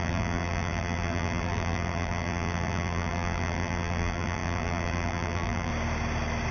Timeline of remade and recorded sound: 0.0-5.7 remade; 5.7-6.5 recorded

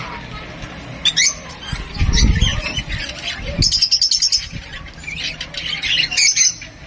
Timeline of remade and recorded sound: 0.0-6.9 recorded

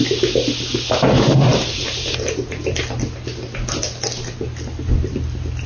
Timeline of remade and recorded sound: 0.0-1.5 recorded; 1.5-2.8 remade; 2.8-5.7 recorded